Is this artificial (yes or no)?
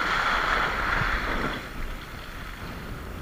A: yes